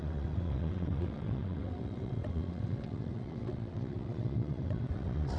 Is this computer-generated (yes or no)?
yes